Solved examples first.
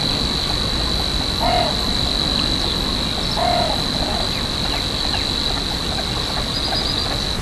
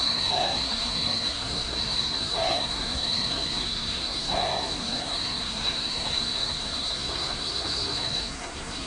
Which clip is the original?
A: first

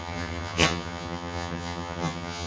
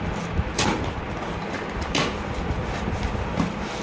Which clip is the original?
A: second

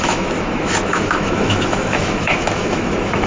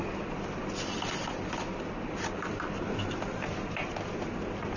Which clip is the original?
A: second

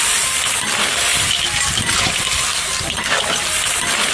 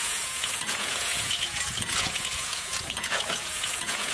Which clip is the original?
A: first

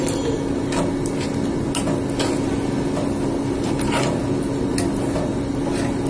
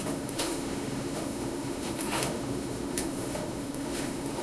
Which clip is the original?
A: first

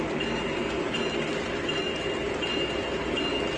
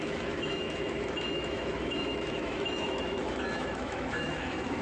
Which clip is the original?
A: first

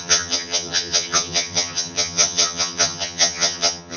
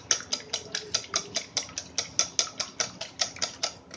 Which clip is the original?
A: second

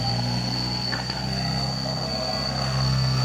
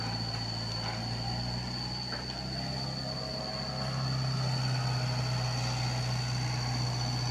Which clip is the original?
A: second